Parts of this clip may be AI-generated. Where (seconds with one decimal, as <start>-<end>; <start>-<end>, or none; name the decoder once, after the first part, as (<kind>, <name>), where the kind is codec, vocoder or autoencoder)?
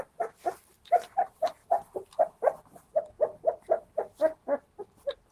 none